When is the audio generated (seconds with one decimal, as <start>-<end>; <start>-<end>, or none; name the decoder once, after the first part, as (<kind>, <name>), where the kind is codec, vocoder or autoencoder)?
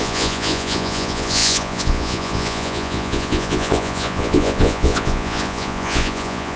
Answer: 0.0-6.6 (vocoder, Vocos)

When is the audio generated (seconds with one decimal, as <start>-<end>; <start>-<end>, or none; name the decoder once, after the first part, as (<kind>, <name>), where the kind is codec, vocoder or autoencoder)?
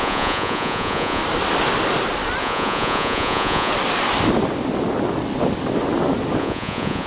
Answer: 0.0-1.2 (vocoder, Vocos); 2.4-3.7; 6.4-7.1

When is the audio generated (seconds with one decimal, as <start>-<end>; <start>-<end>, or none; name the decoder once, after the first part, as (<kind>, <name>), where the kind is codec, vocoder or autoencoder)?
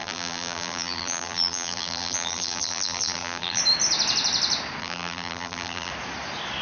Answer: 0.0-3.6 (vocoder, BigVGAN v2); 4.8-5.9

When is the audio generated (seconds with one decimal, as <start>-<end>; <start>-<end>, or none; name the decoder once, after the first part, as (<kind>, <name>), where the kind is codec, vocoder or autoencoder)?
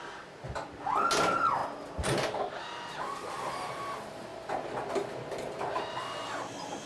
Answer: none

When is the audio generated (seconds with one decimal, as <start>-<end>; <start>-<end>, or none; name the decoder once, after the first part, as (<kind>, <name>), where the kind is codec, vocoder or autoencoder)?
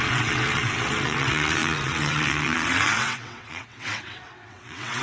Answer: 0.0-5.0 (vocoder, WaveNeXt)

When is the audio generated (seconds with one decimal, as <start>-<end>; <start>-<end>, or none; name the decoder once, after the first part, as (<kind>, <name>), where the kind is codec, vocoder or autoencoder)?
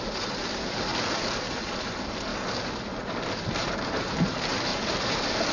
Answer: 0.0-0.9 (vocoder, BigVGAN v2); 1.4-2.3; 3.0-4.7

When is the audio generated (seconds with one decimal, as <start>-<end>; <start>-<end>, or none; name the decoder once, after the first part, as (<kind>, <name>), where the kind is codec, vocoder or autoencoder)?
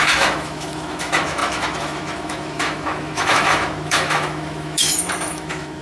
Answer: 0.0-5.8 (autoencoder, DAC-VAE)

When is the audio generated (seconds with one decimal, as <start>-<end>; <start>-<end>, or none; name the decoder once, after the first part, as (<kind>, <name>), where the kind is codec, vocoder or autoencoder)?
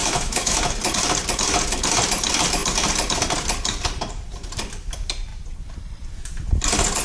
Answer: 0.0-0.6 (autoencoder, DAC-VAE)